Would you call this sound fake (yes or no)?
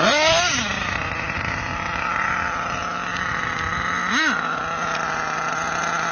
no